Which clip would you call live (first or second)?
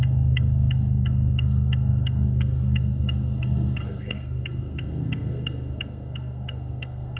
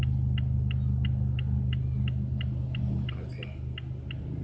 second